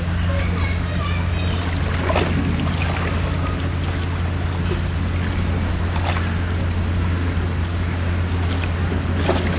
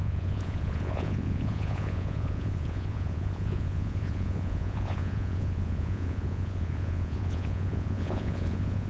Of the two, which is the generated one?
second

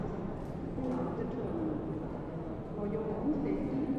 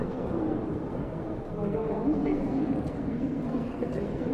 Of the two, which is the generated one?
second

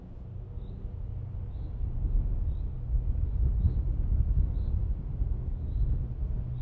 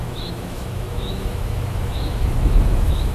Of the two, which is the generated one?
second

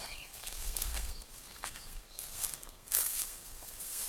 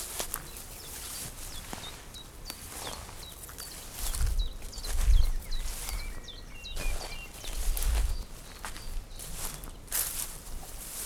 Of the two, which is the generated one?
first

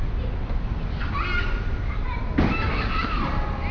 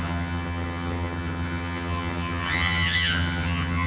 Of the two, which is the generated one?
second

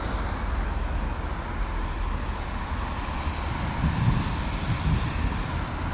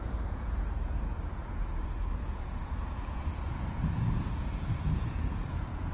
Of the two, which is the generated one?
second